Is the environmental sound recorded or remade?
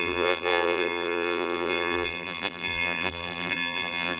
remade